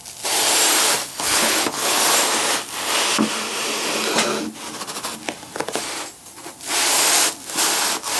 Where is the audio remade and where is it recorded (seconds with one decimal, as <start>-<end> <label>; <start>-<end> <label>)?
0.0-1.1 recorded; 1.1-2.0 remade; 2.0-8.2 recorded